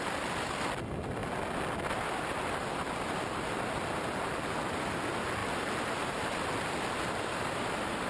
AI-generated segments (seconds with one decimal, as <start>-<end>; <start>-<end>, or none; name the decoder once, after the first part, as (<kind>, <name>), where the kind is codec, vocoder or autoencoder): none